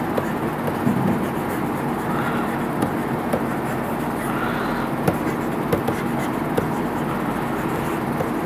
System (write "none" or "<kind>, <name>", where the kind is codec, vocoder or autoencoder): none